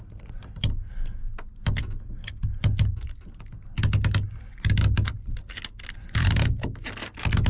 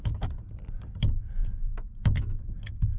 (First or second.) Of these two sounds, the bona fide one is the first